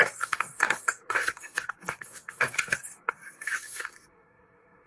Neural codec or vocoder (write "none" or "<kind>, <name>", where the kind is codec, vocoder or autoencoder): codec, SNAC